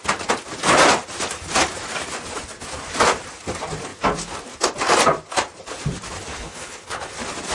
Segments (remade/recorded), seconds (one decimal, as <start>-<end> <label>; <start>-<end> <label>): 0.0-6.3 recorded; 6.3-7.1 remade; 7.1-7.5 recorded